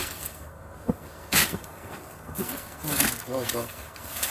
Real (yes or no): no